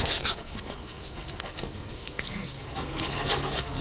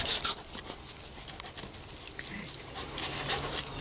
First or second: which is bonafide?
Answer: second